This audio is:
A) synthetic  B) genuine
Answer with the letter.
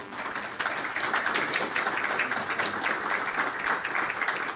B